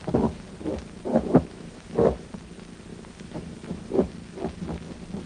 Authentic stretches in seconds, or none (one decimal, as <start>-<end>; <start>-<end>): 0.0-1.1; 2.3-2.9; 4.1-5.3